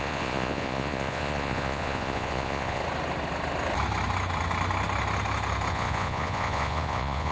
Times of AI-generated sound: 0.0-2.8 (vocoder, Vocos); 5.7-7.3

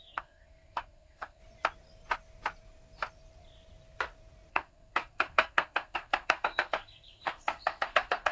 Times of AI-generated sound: 0.0-1.4 (codec, SNAC); 4.5-8.3

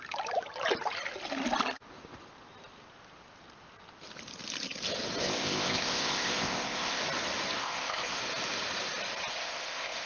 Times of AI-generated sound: 5.2-7.0 (codec, ZipCodec); 7.6-8.2; 9.3-10.1

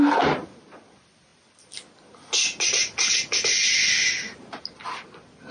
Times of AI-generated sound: none